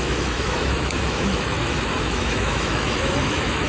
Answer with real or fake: fake